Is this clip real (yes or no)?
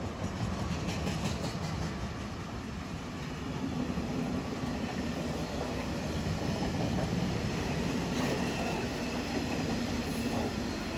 yes